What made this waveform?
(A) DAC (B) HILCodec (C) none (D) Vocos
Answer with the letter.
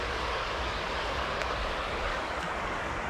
A